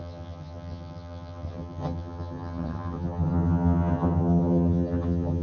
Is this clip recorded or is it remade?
remade